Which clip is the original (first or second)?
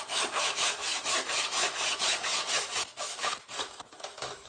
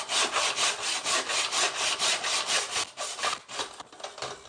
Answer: second